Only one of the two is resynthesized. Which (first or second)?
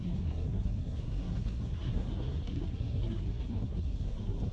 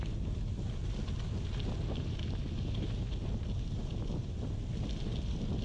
first